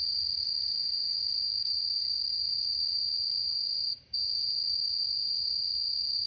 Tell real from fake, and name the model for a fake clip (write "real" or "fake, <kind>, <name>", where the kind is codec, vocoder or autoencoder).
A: fake, vocoder, BigVGAN v2